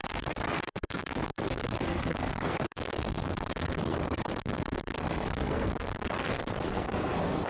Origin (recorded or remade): remade